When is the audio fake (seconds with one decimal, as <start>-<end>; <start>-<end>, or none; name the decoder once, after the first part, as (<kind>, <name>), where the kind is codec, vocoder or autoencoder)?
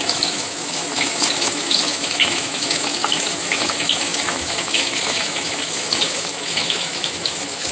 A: 0.0-7.7 (autoencoder, DAC-VAE)